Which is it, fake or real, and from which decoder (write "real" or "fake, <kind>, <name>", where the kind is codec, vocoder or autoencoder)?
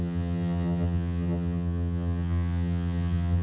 fake, vocoder, HiFi-GAN